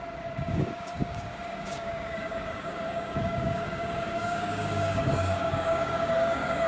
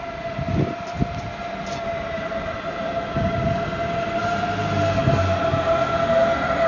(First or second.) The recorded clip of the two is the second